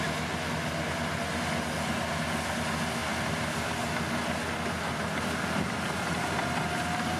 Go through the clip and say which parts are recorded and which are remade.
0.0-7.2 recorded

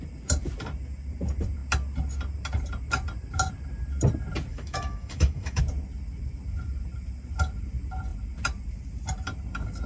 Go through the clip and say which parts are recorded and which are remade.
0.0-4.5 recorded; 4.5-5.6 remade; 5.6-9.9 recorded

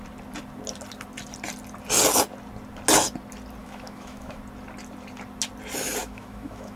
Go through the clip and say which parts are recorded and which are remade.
0.0-3.6 recorded; 3.6-4.4 remade; 4.4-6.0 recorded; 6.0-6.8 remade

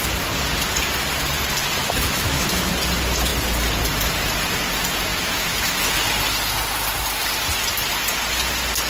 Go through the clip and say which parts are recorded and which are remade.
0.0-1.8 recorded; 1.8-2.7 remade; 2.7-5.1 recorded; 5.1-5.9 remade; 5.9-8.9 recorded